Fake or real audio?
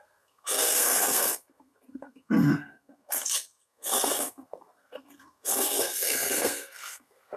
fake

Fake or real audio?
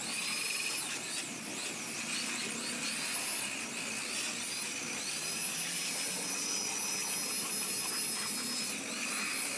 real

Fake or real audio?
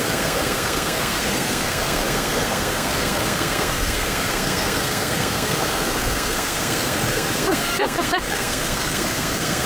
fake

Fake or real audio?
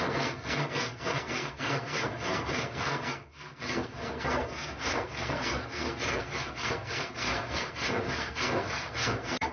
fake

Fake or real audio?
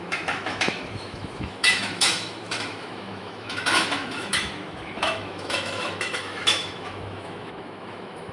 fake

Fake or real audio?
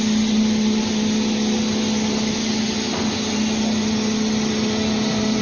real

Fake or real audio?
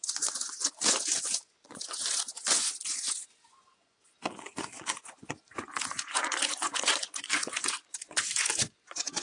fake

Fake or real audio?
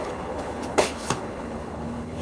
fake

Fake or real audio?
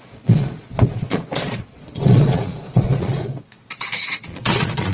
fake